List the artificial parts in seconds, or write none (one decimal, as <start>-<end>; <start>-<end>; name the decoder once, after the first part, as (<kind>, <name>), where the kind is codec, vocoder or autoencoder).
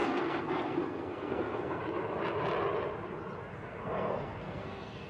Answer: 0.0-1.8 (codec, SNAC); 3.5-5.1